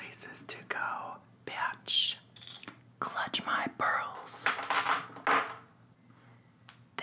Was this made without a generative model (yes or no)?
yes